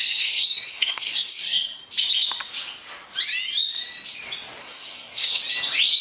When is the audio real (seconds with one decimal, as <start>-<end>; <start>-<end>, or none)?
1.8-4.6; 5.4-6.0